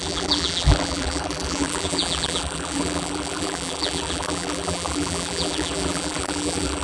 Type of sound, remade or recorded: remade